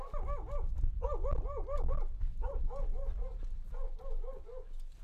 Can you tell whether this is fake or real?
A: real